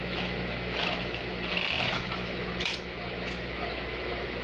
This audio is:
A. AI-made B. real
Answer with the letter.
A